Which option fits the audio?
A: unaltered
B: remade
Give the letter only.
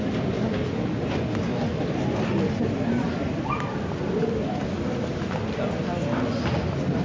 A